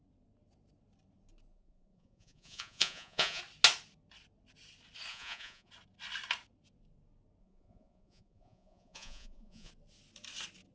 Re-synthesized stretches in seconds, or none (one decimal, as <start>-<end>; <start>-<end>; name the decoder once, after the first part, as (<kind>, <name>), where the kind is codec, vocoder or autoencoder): 1.5-3.4 (vocoder, Vocos); 5.1-5.7; 7.4-9.7